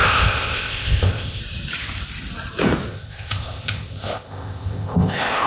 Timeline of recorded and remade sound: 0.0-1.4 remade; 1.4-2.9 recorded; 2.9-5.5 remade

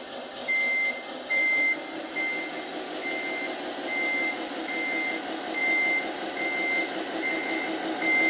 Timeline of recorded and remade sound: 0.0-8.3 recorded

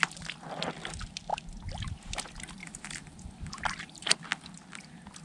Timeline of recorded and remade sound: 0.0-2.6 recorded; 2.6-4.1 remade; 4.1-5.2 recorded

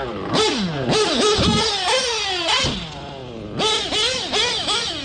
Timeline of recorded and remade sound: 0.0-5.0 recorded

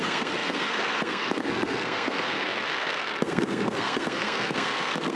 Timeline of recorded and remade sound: 0.0-5.2 remade

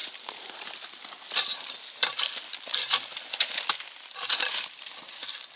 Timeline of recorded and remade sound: 0.0-5.6 recorded

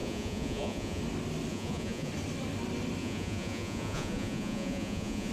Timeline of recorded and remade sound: 0.0-1.0 remade; 1.0-1.5 recorded; 1.5-2.1 remade; 2.1-3.0 recorded; 3.0-5.3 remade